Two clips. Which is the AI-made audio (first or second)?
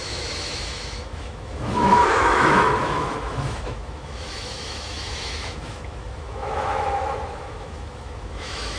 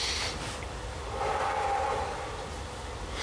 first